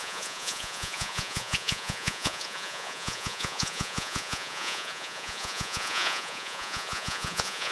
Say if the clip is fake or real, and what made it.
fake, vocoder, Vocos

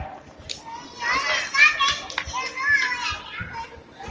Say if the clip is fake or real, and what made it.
real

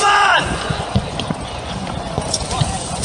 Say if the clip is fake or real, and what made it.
fake, vocoder, Vocos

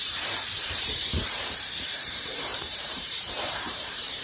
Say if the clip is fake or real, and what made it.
fake, vocoder, BigVGAN v2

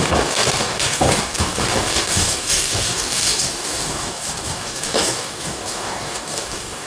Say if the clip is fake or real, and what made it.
fake, codec, DAC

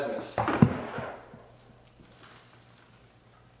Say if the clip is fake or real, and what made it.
real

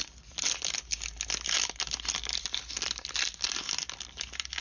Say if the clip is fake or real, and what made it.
real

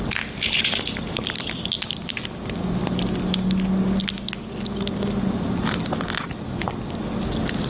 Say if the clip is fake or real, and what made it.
real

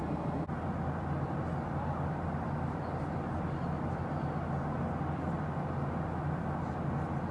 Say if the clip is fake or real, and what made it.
real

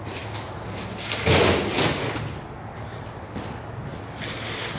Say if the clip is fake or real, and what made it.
real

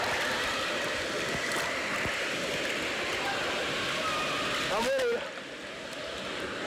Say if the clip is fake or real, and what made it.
real